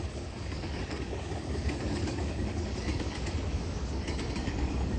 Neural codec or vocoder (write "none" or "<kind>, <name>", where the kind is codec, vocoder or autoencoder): codec, DAC